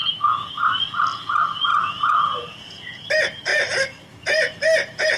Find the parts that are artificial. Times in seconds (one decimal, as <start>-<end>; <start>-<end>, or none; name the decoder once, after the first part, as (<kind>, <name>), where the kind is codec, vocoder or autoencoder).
0.0-0.5 (vocoder, Vocos); 1.7-3.1